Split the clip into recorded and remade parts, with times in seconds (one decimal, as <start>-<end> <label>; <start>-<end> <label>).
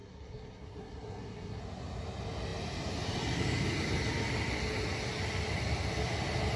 0.0-1.6 remade; 1.6-6.6 recorded